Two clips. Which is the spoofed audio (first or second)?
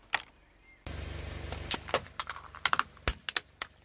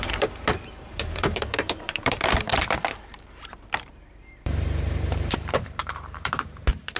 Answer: second